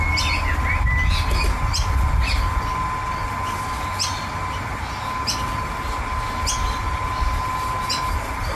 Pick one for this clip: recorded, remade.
recorded